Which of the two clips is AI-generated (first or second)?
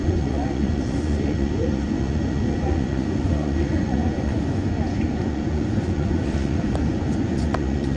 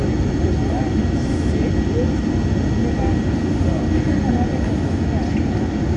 first